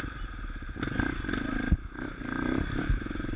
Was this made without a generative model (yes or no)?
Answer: yes